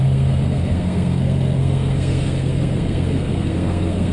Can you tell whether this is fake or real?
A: fake